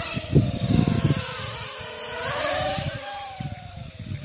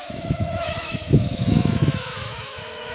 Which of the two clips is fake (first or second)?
second